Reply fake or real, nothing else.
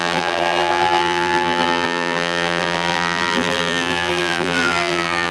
fake